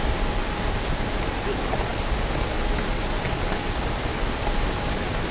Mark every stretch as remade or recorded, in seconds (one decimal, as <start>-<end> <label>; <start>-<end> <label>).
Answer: 0.0-5.3 recorded